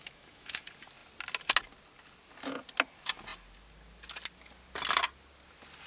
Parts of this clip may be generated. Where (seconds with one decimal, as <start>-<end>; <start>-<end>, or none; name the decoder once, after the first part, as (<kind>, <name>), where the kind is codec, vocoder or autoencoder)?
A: 0.0-0.6 (autoencoder, DAC-VAE)